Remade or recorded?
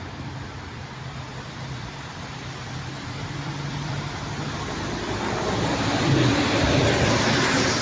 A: remade